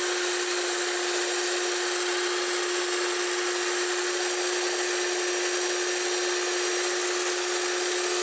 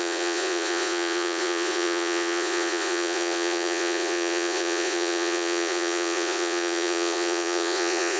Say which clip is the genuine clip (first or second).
first